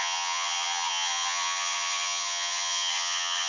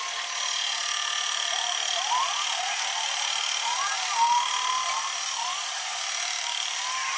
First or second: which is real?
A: second